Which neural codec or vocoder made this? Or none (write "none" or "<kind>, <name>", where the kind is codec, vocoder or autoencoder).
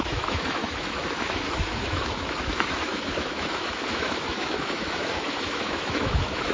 autoencoder, DAC-VAE